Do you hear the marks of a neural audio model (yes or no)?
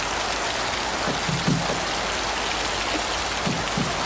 no